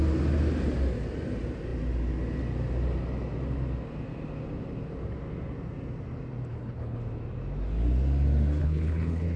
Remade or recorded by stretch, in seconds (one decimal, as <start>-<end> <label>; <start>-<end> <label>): 0.0-6.5 recorded; 6.5-7.0 remade; 7.0-8.6 recorded; 8.6-9.4 remade